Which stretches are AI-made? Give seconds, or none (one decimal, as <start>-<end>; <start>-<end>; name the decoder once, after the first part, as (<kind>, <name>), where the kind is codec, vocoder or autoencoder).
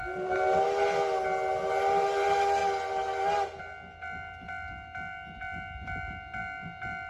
none